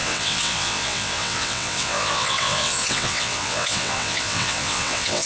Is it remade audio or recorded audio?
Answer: remade